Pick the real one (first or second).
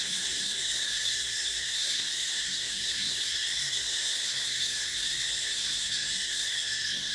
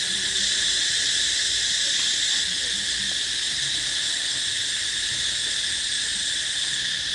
second